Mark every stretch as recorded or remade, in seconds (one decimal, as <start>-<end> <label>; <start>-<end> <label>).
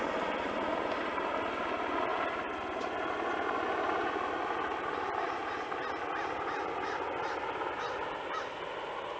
0.0-2.1 recorded; 2.1-2.6 remade; 2.6-9.2 recorded